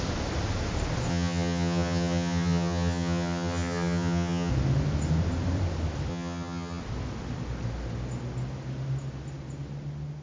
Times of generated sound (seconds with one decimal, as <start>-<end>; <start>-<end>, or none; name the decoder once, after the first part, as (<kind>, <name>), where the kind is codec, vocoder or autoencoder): 1.1-4.5 (vocoder, HiFi-GAN); 6.1-6.8